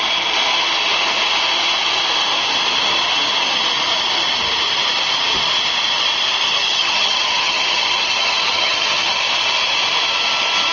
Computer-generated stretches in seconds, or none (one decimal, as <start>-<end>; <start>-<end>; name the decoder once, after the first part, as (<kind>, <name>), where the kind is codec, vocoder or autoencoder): 6.6-9.1 (vocoder, HiFi-GAN)